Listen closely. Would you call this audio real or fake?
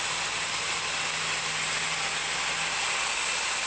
real